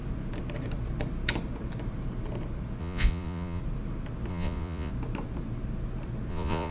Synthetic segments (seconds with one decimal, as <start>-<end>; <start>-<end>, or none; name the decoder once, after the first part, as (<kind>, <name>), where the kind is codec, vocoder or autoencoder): 2.8-3.6 (vocoder, Vocos); 4.3-4.9; 6.3-6.7